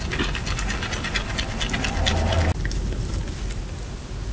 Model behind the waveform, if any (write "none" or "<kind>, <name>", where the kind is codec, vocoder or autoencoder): none